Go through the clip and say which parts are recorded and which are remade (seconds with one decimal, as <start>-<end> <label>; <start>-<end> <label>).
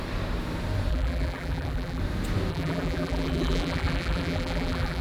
0.0-0.9 recorded; 0.9-2.0 remade; 2.0-2.5 recorded; 2.5-5.0 remade